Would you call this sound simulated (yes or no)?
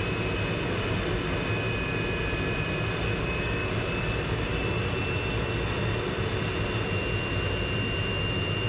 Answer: no